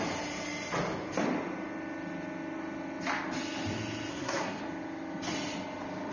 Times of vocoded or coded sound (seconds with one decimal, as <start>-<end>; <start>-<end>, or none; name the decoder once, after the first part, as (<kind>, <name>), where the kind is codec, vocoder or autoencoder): 4.1-4.6 (codec, SNAC)